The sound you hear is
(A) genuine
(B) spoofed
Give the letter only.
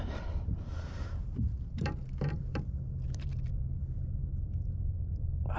B